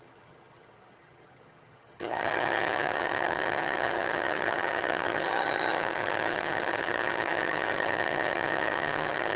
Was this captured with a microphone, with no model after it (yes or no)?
no